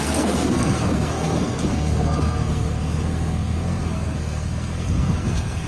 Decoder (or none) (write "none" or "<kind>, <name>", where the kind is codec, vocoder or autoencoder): codec, SNAC